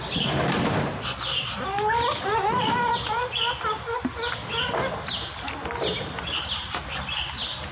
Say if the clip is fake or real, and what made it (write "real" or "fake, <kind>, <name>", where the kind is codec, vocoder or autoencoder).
real